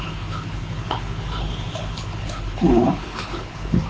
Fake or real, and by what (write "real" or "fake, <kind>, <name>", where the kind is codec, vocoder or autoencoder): fake, codec, HILCodec